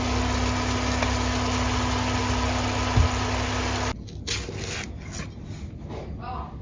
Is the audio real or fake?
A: real